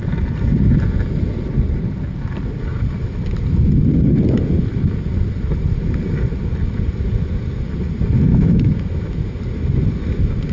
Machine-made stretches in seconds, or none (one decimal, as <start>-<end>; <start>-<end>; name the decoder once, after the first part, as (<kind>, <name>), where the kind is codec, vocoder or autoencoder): 8.3-9.2 (autoencoder, DAC-VAE)